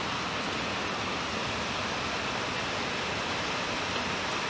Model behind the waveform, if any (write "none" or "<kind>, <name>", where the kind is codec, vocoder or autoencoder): none